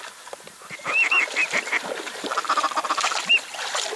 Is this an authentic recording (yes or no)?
no